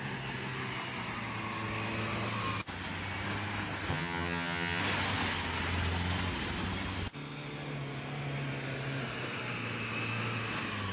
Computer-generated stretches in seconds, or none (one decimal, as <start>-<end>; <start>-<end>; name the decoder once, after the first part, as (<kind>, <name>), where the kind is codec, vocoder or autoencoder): 3.9-4.8 (vocoder, HiFi-GAN)